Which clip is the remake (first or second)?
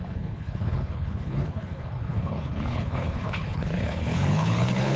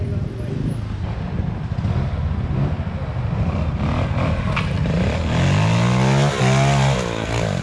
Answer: first